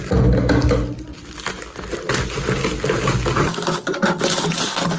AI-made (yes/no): no